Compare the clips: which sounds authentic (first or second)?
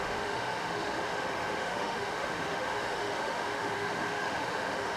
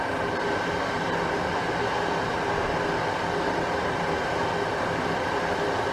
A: second